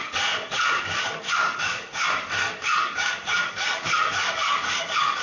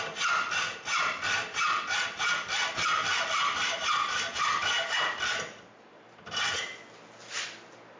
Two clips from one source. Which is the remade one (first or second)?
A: first